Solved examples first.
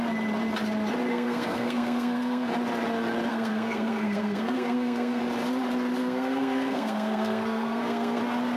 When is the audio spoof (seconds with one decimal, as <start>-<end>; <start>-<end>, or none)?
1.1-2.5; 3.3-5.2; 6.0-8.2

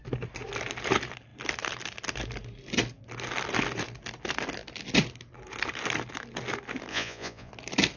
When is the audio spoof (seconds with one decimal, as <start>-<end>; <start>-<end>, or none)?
6.9-7.5

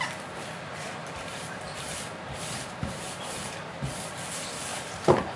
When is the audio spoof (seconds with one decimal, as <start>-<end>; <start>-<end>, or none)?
1.0-4.0; 4.7-5.4

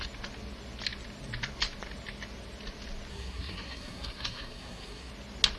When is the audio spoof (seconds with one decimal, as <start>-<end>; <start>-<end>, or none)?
3.1-5.1

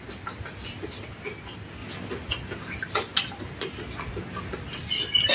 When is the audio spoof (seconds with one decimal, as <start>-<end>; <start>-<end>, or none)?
none

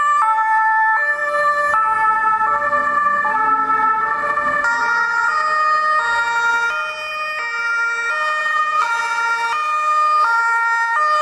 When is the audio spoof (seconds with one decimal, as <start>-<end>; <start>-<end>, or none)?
8.4-8.9

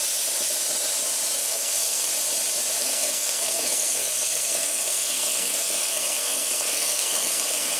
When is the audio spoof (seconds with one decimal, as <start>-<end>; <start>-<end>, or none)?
1.4-2.1; 2.8-7.8

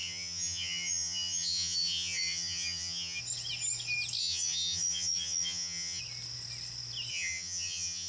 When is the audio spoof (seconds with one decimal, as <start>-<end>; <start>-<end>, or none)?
0.0-3.2; 4.2-6.0; 7.1-8.1